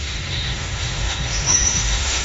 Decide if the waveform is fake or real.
fake